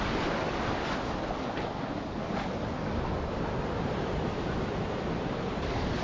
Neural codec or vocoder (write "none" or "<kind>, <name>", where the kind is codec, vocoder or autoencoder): none